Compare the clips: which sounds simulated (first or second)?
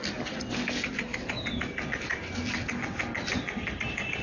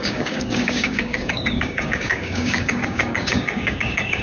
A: second